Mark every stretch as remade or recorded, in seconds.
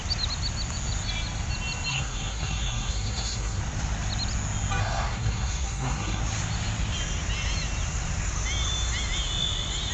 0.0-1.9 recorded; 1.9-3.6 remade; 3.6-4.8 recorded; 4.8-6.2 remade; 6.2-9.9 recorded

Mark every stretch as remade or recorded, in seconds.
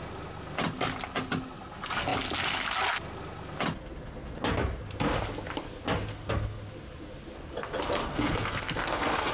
0.0-6.1 recorded; 6.1-6.6 remade; 6.6-8.1 recorded; 8.1-9.3 remade